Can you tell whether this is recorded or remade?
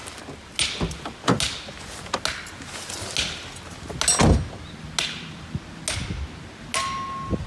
recorded